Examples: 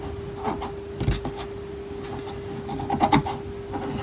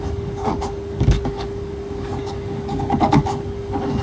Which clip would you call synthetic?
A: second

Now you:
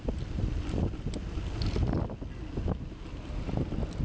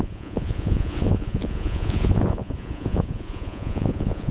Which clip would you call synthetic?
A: second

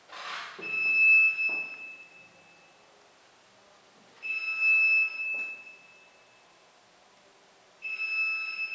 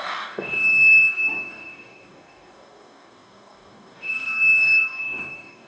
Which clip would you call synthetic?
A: second